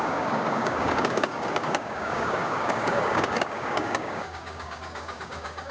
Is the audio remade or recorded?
remade